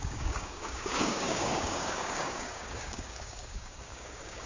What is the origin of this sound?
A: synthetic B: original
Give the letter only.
A